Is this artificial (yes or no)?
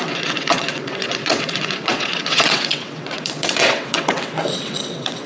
yes